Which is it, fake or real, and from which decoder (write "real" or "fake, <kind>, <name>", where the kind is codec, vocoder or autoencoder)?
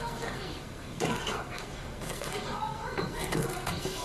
fake, codec, SNAC